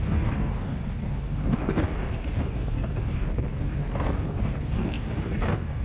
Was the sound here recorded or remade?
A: remade